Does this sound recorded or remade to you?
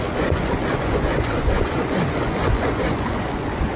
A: remade